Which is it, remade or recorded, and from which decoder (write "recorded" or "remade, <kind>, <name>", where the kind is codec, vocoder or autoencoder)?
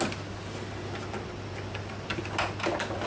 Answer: recorded